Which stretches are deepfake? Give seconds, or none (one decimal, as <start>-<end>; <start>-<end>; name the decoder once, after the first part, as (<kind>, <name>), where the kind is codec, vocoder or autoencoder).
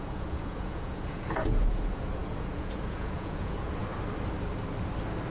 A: 0.0-3.8 (vocoder, Vocos)